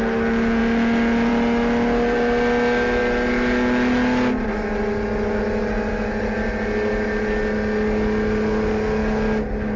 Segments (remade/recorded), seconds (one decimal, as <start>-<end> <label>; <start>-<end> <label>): 0.0-9.8 recorded